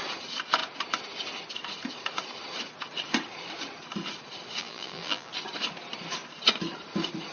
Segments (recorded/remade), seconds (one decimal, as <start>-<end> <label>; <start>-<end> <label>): 0.0-4.6 recorded; 4.6-5.3 remade; 5.3-7.3 recorded